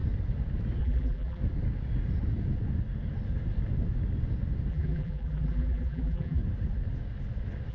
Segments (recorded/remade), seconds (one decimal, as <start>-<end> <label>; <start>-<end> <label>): 0.0-0.8 recorded; 0.8-1.4 remade; 1.4-4.7 recorded; 4.7-6.4 remade; 6.4-7.7 recorded

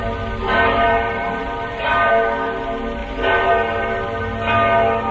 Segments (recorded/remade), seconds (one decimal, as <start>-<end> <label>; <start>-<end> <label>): 0.0-0.4 recorded; 0.4-2.1 remade; 2.1-3.0 recorded; 3.0-3.5 remade; 3.5-5.1 recorded

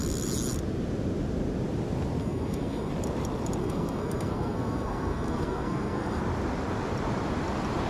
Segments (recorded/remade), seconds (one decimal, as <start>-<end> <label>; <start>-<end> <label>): 0.0-2.2 recorded; 2.2-2.9 remade; 2.9-3.6 recorded; 3.6-6.2 remade; 6.2-7.9 recorded

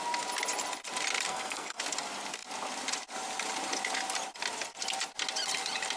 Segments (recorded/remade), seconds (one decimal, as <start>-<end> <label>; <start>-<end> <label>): 0.0-1.3 recorded; 1.3-1.8 remade; 1.8-6.0 recorded

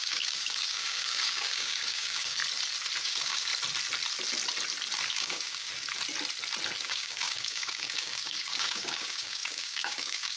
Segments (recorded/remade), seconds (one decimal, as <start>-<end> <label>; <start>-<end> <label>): 0.0-2.4 remade; 2.4-3.0 recorded; 3.0-3.5 remade; 3.5-5.1 recorded; 5.1-5.7 remade; 5.7-6.8 recorded; 6.8-10.4 remade

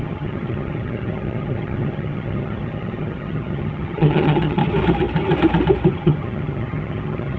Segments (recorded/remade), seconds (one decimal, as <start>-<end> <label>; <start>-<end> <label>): 0.0-4.6 remade; 4.6-5.9 recorded; 5.9-7.4 remade